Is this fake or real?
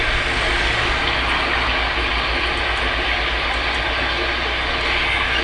real